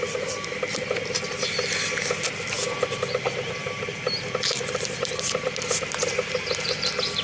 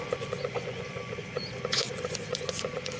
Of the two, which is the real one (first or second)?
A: first